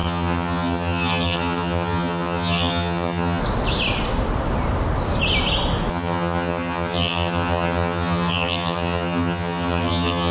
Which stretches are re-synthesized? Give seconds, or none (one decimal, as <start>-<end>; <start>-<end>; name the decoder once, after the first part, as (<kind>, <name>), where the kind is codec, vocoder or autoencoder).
0.0-3.4 (vocoder, HiFi-GAN); 5.9-10.3

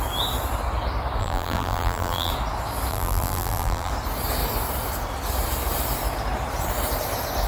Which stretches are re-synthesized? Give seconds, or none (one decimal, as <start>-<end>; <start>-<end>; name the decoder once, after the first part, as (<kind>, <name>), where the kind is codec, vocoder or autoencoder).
1.2-2.3 (vocoder, BigVGAN v2); 2.9-3.9

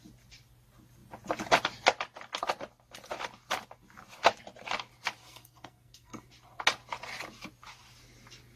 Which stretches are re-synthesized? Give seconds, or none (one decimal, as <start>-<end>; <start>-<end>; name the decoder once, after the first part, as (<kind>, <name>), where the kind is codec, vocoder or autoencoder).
5.2-6.3 (codec, SNAC)

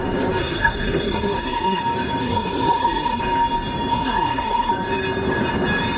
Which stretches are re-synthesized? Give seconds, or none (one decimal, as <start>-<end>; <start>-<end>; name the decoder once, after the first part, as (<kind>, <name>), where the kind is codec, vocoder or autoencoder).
0.4-1.8 (codec, SNAC); 2.2-3.2; 3.9-4.7

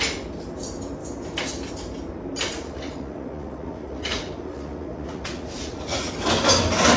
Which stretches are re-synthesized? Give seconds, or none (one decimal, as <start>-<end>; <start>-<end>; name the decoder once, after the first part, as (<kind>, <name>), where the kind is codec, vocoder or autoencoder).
2.5-6.1 (vocoder, Vocos)

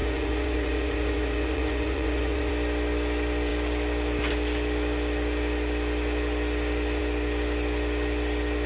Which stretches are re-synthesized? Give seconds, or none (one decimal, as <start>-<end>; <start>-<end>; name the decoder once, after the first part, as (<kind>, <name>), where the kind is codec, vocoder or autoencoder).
0.0-2.5 (vocoder, Vocos)